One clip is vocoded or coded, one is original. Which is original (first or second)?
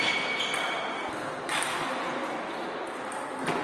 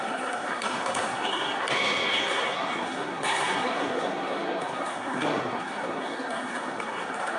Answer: first